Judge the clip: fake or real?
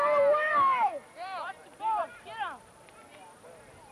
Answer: fake